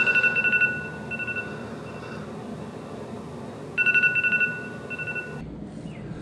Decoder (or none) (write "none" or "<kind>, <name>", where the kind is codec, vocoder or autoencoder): none